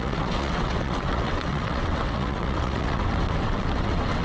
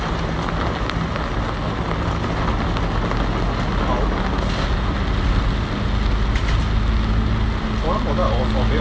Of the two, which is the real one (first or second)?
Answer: second